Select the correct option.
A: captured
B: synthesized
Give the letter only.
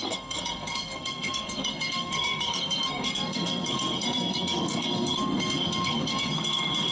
B